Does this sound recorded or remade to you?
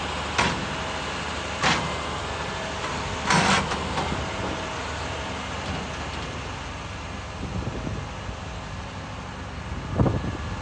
recorded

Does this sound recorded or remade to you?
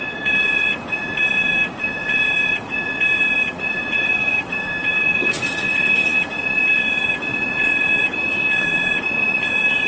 remade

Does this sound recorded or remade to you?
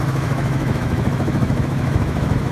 remade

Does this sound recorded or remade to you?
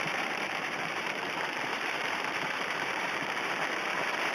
remade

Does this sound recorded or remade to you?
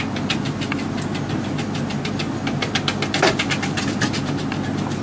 recorded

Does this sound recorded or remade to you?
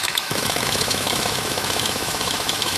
remade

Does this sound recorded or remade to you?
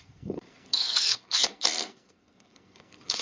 remade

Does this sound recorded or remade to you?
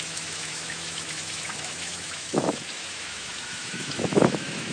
remade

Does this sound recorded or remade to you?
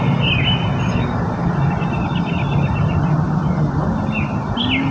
recorded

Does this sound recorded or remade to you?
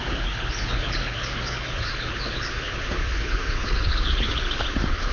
remade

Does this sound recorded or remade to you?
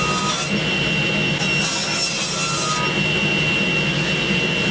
recorded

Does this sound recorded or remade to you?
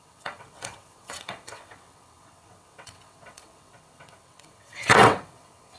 remade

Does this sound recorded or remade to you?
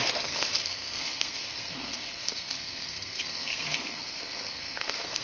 remade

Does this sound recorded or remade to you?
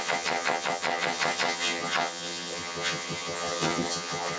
remade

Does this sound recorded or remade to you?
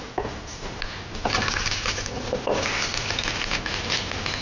recorded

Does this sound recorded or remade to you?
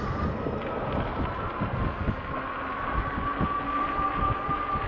recorded